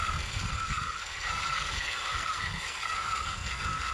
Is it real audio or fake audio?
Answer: fake